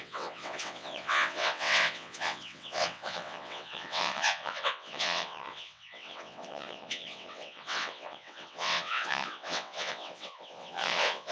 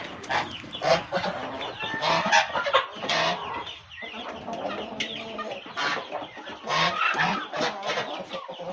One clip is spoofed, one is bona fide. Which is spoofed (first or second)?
first